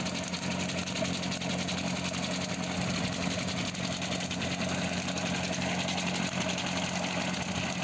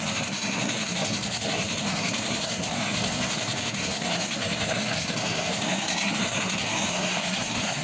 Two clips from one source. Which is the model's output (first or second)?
second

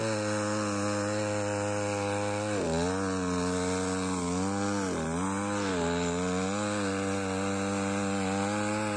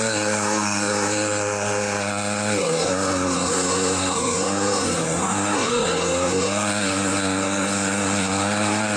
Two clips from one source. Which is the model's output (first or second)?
second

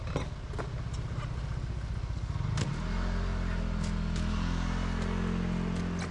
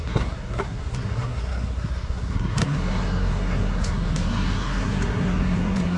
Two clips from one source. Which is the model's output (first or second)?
second